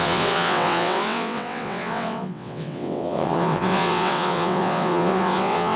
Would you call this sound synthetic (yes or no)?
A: yes